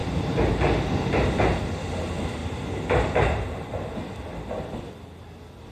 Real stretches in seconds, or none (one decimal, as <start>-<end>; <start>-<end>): 0.0-2.4; 4.9-5.7